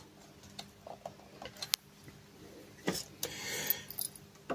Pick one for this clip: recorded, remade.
recorded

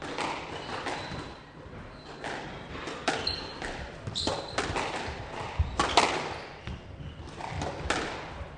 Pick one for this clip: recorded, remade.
remade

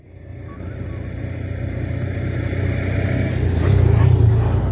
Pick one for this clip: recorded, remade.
recorded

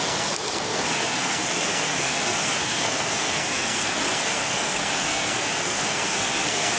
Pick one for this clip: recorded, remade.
remade